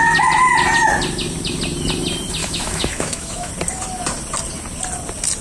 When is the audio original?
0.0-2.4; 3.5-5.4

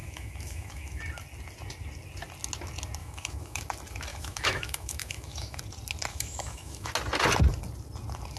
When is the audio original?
1.0-3.0; 3.6-4.1; 5.6-6.1; 6.9-8.4

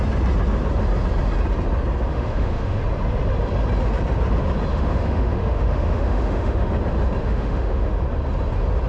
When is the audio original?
0.0-2.1; 2.8-4.7; 6.7-7.2; 8.0-8.9

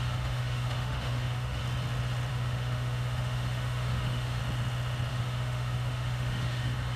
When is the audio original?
1.6-2.3; 4.4-5.1

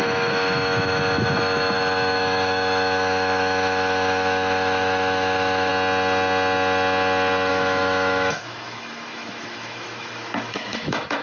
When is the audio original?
5.7-7.5

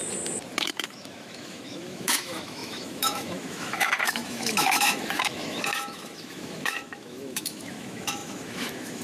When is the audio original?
0.0-0.6

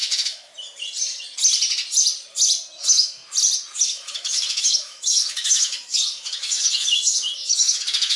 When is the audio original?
0.5-2.8; 3.2-3.9

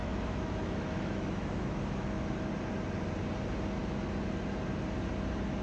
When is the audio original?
2.3-5.6